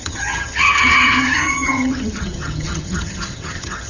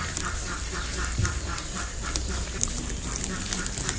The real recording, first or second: second